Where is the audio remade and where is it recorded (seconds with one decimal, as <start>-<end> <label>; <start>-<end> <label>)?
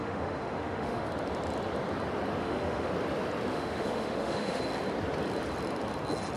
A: 0.0-1.1 remade; 1.1-2.4 recorded; 2.4-2.9 remade; 2.9-3.5 recorded; 3.5-4.6 remade; 4.6-6.4 recorded